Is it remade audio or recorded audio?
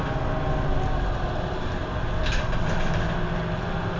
recorded